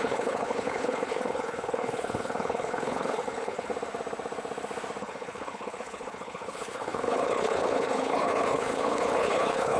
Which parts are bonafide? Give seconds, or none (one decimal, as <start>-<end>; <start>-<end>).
3.7-5.0